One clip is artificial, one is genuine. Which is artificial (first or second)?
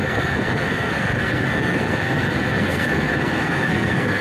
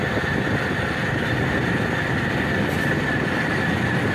first